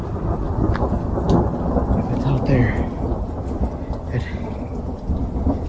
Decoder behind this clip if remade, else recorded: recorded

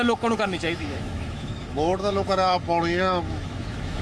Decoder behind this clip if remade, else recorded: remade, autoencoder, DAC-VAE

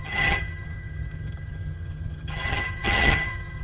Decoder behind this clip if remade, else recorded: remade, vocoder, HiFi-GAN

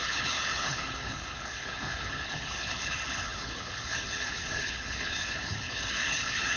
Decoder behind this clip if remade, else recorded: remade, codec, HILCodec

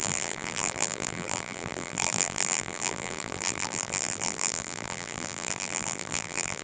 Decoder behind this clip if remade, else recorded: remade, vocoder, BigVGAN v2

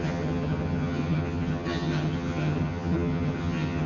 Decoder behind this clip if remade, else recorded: remade, vocoder, HiFi-GAN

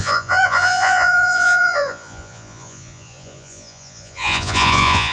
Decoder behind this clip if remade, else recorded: remade, vocoder, Vocos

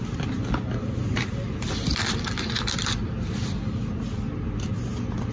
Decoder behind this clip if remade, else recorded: recorded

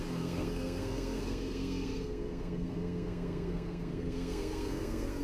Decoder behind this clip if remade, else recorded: remade, codec, SNAC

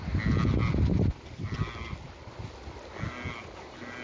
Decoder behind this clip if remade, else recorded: recorded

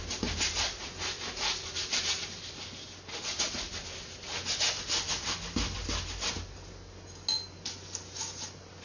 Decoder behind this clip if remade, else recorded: recorded